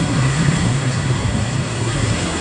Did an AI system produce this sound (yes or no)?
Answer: yes